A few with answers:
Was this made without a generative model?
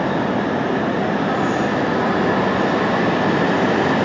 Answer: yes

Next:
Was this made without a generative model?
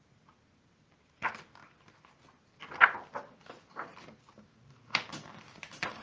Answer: yes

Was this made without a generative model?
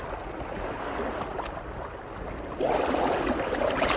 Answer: yes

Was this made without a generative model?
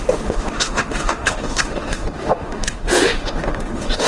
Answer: no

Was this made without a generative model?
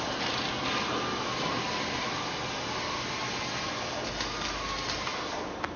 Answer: yes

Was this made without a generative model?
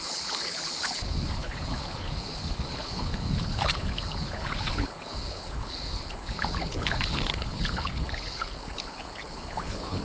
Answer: no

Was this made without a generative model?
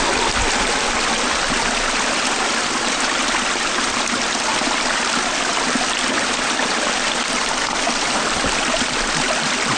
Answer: yes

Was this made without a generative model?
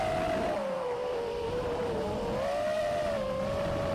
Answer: yes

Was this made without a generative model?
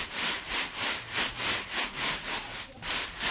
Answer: yes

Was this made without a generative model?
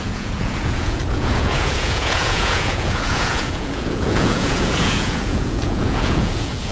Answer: no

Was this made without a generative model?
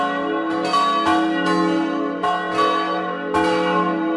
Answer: yes